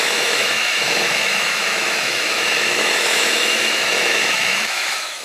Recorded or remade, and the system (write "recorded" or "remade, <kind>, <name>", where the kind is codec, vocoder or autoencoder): remade, autoencoder, DAC-VAE